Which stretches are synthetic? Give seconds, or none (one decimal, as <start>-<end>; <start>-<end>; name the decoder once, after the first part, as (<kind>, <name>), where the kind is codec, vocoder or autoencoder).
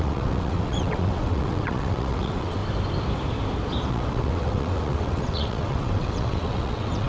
0.0-2.6 (vocoder, WaveNeXt); 3.9-7.1